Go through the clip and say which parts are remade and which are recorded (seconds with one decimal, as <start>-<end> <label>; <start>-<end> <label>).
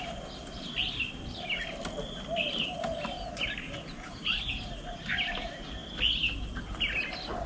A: 0.0-7.5 recorded